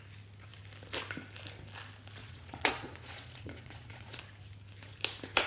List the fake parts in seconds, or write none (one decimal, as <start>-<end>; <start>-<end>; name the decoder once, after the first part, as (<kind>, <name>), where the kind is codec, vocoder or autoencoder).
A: 2.2-4.2 (vocoder, Vocos)